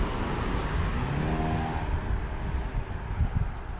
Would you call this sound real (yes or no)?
yes